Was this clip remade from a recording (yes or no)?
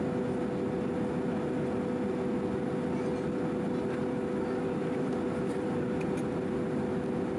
no